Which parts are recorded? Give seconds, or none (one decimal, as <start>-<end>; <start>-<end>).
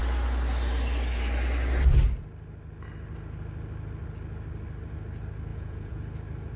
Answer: 0.0-5.5; 6.0-6.6